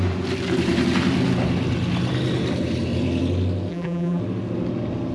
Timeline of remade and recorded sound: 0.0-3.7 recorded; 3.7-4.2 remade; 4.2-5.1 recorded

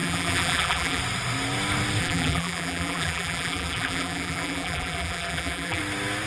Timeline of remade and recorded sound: 0.0-1.0 remade; 1.0-2.0 recorded; 2.0-5.8 remade; 5.8-6.3 recorded

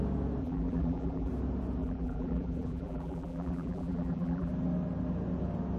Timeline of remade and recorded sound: 0.0-0.4 recorded; 0.4-1.3 remade; 1.3-1.8 recorded; 1.8-4.5 remade; 4.5-5.8 recorded

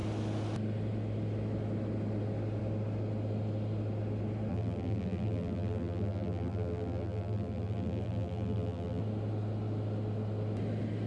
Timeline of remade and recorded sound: 0.0-4.5 recorded; 4.5-9.0 remade; 9.0-11.1 recorded

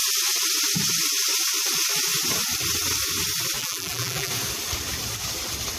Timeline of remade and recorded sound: 0.0-3.6 recorded; 3.6-4.3 remade; 4.3-5.8 recorded

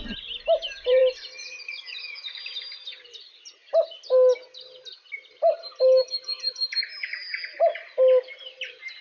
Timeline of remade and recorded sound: 0.0-1.0 remade; 1.0-3.0 recorded; 3.0-3.6 remade; 3.6-5.1 recorded; 5.1-6.6 remade; 6.6-8.4 recorded; 8.4-9.0 remade